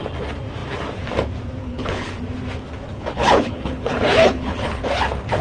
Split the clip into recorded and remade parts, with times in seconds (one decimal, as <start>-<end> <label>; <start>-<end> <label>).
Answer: 0.0-1.6 recorded; 1.6-2.2 remade; 2.2-2.9 recorded; 2.9-4.8 remade; 4.8-5.4 recorded